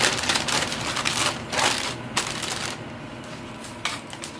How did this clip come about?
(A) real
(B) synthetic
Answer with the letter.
A